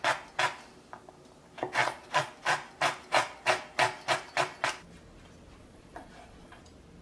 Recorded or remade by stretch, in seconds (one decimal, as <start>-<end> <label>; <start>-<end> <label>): 0.0-1.8 recorded; 1.8-2.3 remade; 2.3-5.6 recorded; 5.6-6.6 remade; 6.6-7.0 recorded